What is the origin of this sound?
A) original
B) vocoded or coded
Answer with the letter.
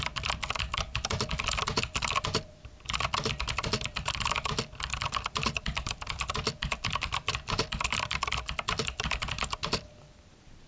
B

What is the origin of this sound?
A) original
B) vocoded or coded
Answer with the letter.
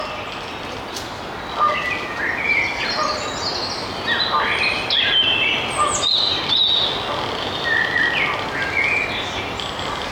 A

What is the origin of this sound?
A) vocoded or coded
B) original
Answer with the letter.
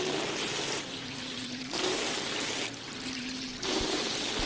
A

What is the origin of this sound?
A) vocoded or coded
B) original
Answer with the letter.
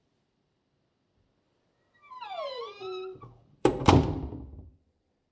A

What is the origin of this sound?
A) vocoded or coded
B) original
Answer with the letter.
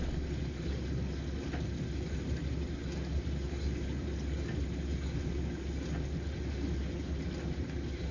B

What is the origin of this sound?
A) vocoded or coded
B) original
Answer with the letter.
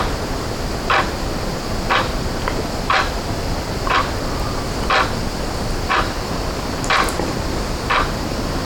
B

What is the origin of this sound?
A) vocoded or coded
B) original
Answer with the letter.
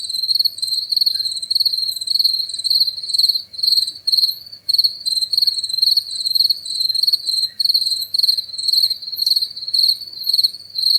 B